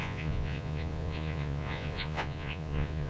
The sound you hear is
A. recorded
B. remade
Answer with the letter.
B